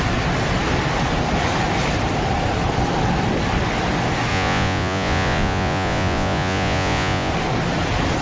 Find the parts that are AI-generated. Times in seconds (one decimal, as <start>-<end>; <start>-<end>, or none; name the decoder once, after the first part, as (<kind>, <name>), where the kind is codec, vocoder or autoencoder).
4.3-7.3 (vocoder, Vocos)